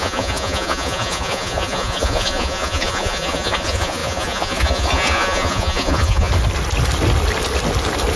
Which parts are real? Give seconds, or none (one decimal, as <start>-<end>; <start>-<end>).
6.3-8.2